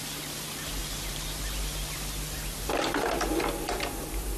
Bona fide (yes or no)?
yes